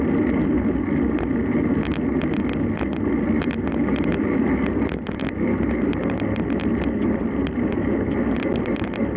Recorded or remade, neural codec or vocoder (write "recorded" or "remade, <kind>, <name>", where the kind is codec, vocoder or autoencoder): recorded